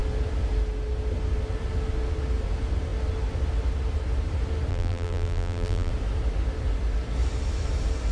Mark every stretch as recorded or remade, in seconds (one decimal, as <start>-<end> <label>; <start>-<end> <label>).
0.0-4.7 recorded; 4.7-5.9 remade; 5.9-8.1 recorded